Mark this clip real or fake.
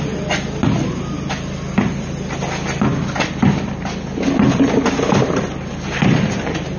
real